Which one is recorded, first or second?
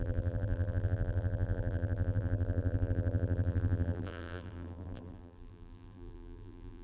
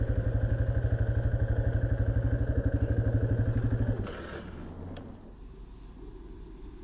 second